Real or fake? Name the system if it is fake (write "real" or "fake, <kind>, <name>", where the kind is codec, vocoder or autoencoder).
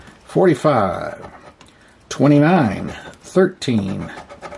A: real